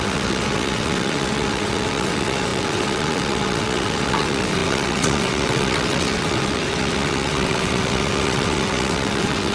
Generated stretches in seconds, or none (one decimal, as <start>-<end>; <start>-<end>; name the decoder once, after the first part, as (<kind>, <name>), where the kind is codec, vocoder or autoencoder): 0.0-9.5 (vocoder, WaveNeXt)